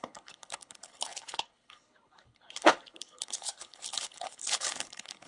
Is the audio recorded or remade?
remade